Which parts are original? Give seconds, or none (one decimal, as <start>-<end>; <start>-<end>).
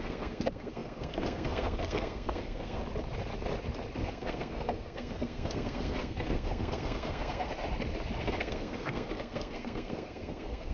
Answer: 2.8-4.0; 7.5-8.2